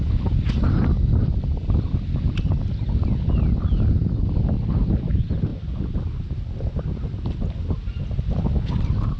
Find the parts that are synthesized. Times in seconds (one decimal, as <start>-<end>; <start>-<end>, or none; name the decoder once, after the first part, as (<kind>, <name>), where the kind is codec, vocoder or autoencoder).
none